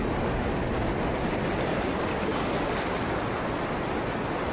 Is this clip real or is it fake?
real